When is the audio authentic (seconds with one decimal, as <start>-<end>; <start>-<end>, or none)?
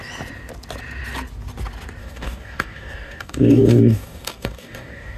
0.0-2.0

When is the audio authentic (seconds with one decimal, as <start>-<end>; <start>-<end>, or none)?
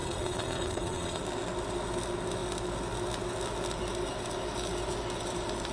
1.2-5.7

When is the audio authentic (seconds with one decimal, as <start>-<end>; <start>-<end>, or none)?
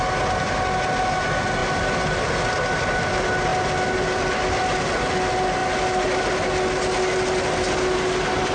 0.0-8.5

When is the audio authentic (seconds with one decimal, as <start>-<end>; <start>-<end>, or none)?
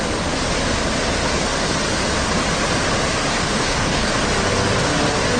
0.0-3.3; 4.1-5.4